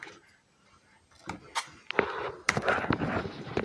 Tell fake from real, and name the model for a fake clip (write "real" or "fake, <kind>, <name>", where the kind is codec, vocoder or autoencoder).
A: real